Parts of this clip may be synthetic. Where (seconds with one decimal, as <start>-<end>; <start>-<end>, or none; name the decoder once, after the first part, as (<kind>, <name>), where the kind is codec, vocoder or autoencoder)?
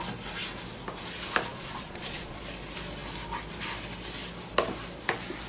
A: 1.5-2.4 (vocoder, Vocos)